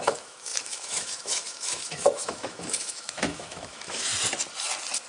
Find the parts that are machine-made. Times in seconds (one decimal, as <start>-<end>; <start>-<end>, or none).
0.0-4.1